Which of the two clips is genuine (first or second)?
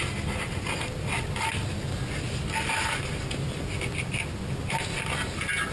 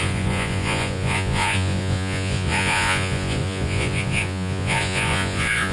first